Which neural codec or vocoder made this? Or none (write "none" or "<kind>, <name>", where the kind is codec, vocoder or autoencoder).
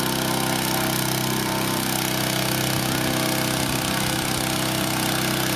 none